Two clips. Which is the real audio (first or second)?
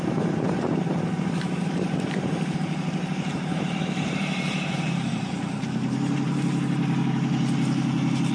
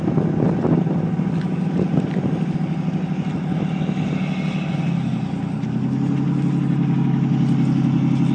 second